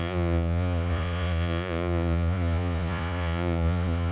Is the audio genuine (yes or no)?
no